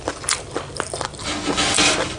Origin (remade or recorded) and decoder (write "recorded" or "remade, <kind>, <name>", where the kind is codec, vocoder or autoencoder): recorded